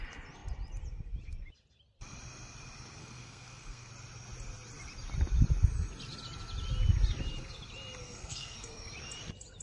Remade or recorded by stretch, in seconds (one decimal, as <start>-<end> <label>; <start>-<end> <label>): 0.0-3.0 recorded; 3.0-3.9 remade; 3.9-8.0 recorded; 8.0-8.9 remade; 8.9-9.6 recorded